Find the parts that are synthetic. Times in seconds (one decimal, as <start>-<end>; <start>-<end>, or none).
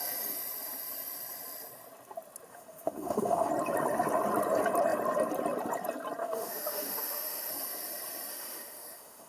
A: 2.5-3.5; 6.2-7.5; 8.3-9.3